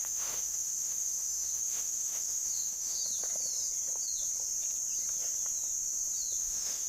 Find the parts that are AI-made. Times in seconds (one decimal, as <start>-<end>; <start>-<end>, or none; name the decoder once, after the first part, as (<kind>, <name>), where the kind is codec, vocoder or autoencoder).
0.0-3.0 (autoencoder, DAC-VAE); 6.4-6.9